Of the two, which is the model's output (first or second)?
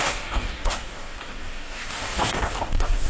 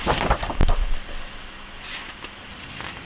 first